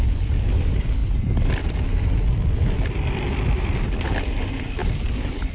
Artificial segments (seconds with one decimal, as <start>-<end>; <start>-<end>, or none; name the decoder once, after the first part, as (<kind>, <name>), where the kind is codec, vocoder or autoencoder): none